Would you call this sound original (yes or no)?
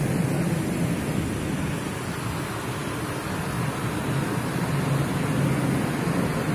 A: yes